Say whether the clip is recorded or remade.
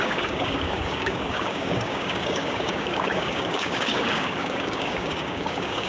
remade